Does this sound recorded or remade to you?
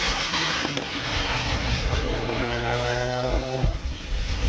remade